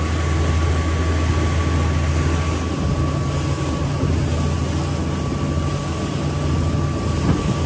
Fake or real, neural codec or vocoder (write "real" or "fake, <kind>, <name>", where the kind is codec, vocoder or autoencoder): real